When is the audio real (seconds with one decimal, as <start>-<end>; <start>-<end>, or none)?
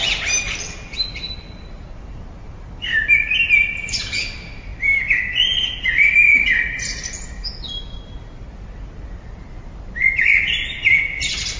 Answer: 0.0-11.6